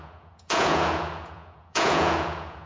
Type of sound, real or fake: fake